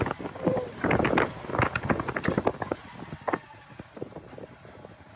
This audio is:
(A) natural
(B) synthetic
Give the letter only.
A